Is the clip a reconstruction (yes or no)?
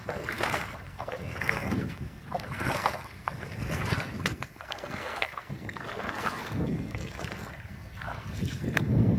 yes